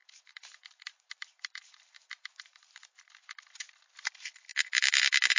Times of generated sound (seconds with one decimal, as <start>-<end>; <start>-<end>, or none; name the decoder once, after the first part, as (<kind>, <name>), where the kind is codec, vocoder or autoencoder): 0.0-3.1 (vocoder, BigVGAN v2); 4.5-5.0